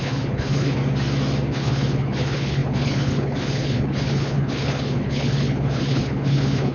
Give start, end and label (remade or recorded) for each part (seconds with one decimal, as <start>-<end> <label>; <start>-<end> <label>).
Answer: 0.0-0.8 remade; 0.8-1.5 recorded; 1.5-6.7 remade